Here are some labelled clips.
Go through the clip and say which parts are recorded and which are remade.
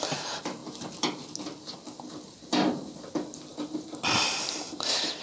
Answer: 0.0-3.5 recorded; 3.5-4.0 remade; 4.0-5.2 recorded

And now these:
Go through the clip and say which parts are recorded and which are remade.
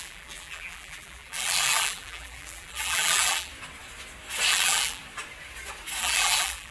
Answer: 0.0-3.5 remade; 3.5-4.5 recorded; 4.5-5.0 remade; 5.0-6.0 recorded; 6.0-6.7 remade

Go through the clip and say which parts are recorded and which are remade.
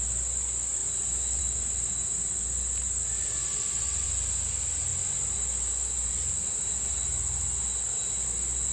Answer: 0.0-8.7 recorded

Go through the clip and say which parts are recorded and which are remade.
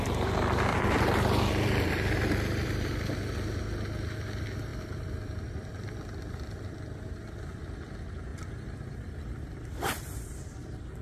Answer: 0.0-0.7 recorded; 0.7-3.1 remade; 3.1-4.7 recorded; 4.7-5.7 remade; 5.7-8.3 recorded; 8.3-10.4 remade; 10.4-11.0 recorded